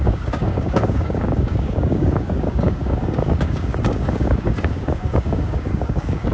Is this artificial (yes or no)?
yes